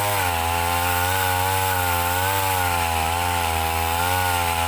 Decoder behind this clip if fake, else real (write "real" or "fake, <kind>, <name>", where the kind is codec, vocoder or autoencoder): real